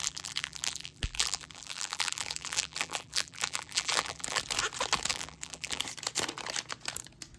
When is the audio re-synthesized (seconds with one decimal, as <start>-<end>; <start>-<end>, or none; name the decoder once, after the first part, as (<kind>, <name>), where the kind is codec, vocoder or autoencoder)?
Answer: 0.0-4.4 (vocoder, BigVGAN v2); 5.1-5.8